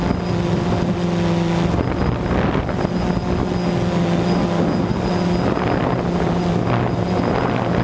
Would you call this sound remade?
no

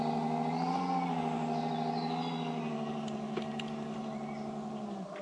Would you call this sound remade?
no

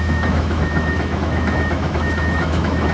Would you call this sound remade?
yes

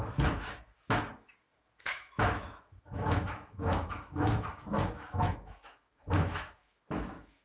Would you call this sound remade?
yes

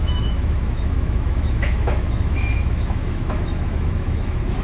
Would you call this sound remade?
yes